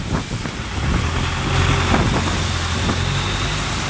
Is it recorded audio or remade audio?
recorded